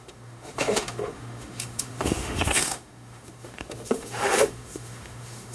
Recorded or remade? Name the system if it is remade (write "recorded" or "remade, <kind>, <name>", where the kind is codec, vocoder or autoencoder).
remade, autoencoder, DAC-VAE